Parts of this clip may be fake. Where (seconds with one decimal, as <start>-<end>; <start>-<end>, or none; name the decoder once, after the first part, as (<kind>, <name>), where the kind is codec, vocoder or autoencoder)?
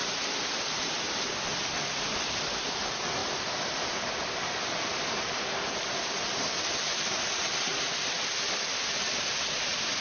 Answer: 0.0-0.9 (vocoder, BigVGAN v2); 3.2-3.8